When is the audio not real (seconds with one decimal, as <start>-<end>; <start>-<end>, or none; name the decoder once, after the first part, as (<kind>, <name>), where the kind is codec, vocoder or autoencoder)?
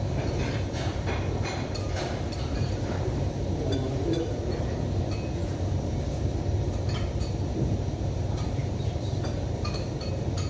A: 0.0-10.5 (vocoder, BigVGAN v2)